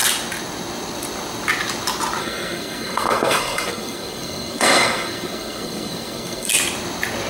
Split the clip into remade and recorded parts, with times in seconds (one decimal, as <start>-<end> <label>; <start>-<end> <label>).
0.0-2.2 recorded; 2.2-6.5 remade; 6.5-7.3 recorded